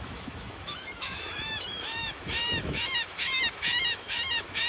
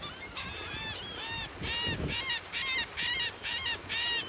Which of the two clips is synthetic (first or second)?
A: first